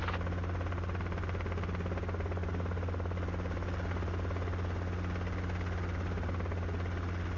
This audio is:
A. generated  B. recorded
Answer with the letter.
B